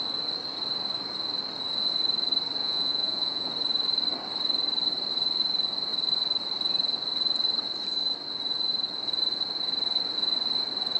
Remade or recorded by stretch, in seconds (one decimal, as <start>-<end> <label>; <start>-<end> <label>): 0.0-2.6 recorded; 2.6-3.5 remade; 3.5-11.0 recorded